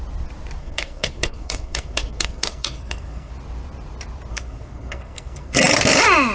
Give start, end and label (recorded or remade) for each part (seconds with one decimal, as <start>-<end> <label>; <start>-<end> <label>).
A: 0.0-0.6 recorded; 0.6-3.3 remade; 3.3-4.3 recorded; 4.3-5.6 remade; 5.6-6.3 recorded